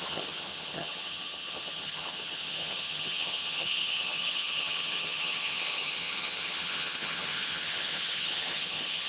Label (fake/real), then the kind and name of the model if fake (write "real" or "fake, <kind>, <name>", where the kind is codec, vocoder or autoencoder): fake, vocoder, HiFi-GAN